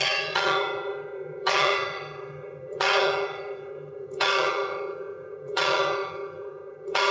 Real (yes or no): no